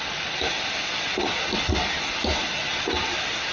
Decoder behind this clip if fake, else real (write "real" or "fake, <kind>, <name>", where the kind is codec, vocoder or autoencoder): real